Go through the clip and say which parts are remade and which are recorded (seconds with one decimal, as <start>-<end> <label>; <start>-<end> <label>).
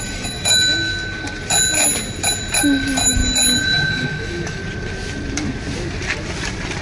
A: 0.0-0.9 remade; 0.9-2.6 recorded; 2.6-3.2 remade; 3.2-3.9 recorded; 3.9-4.6 remade; 4.6-6.8 recorded